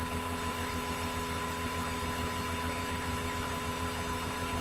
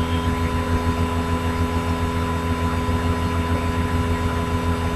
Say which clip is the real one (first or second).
second